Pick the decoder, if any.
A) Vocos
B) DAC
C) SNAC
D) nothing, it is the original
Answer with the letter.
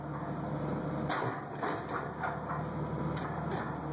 D